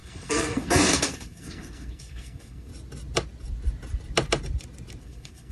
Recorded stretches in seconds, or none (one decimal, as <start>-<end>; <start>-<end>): 2.7-5.0